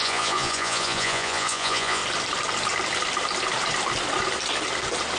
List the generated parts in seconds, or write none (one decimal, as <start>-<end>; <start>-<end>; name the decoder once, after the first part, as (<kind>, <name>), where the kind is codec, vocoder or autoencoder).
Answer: 0.0-2.0 (vocoder, Vocos)